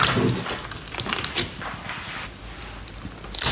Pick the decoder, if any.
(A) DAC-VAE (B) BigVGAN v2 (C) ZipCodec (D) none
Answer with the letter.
D